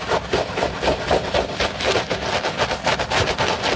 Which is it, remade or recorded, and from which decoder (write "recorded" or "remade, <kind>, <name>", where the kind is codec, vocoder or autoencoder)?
recorded